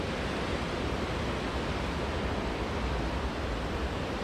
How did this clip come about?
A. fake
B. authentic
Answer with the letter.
B